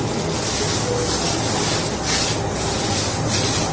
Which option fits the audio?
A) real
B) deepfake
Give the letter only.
A